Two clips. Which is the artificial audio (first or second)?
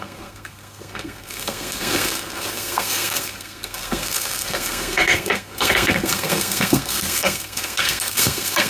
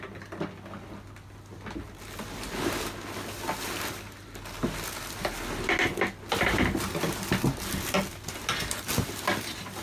first